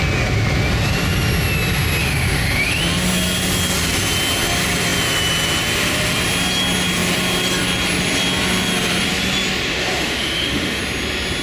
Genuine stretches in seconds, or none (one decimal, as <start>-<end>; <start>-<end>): 0.0-2.0; 2.8-9.7; 10.8-11.4